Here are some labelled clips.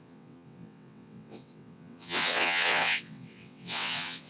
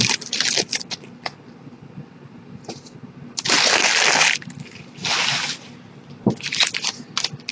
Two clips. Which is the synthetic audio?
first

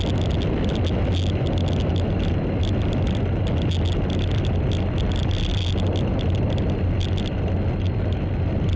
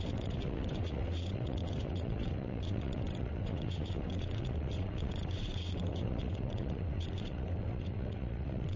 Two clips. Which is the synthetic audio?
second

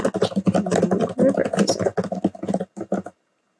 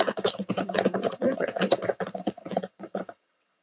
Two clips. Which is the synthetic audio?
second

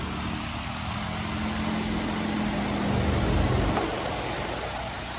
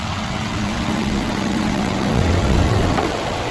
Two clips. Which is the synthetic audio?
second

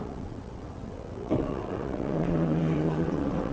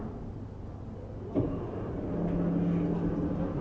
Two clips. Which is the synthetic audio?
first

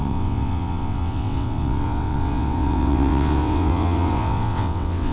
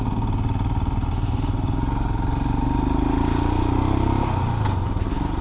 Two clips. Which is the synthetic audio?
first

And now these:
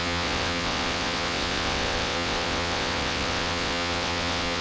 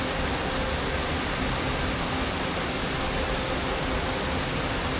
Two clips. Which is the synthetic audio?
first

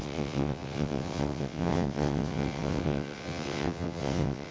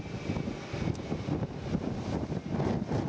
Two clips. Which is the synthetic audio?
first